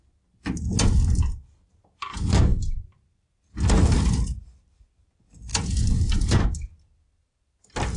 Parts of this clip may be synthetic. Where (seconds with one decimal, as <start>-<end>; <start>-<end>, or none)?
2.5-3.2; 5.5-6.4